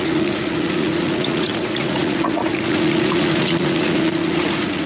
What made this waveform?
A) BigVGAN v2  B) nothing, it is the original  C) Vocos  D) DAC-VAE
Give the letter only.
C